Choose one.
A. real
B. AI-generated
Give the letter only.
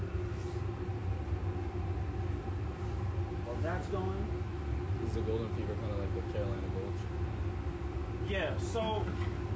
A